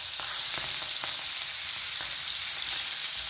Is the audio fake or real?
real